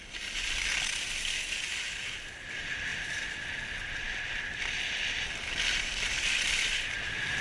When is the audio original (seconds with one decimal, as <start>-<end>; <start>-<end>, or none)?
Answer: 0.0-2.9